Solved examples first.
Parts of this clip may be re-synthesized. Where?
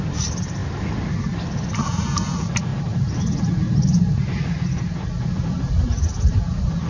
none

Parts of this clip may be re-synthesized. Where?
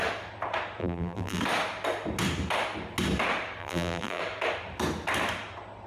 0.8-1.4 (vocoder, BigVGAN v2); 3.6-4.2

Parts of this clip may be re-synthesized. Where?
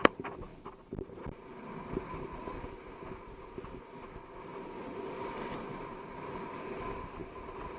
none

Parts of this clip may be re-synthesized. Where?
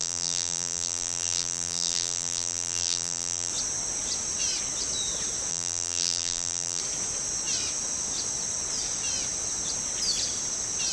0.0-3.5 (vocoder, BigVGAN v2); 5.5-6.8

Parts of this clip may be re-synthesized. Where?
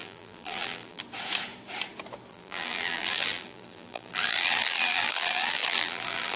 0.0-1.0 (vocoder, BigVGAN v2); 2.3-6.4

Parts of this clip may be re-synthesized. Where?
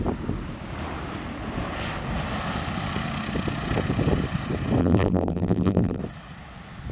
4.8-6.0 (vocoder, BigVGAN v2)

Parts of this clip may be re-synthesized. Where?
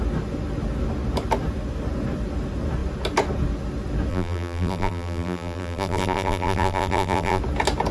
4.1-7.4 (vocoder, BigVGAN v2)